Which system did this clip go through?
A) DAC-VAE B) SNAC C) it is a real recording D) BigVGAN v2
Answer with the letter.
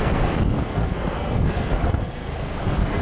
B